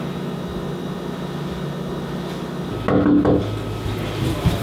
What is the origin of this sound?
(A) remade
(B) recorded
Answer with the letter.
B